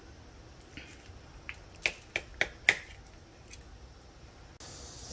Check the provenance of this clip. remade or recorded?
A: recorded